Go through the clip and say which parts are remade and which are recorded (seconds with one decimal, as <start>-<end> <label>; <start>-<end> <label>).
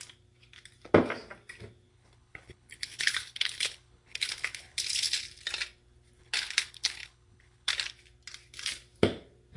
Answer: 0.0-1.9 recorded; 1.9-5.2 remade; 5.2-6.2 recorded; 6.2-7.7 remade; 7.7-9.6 recorded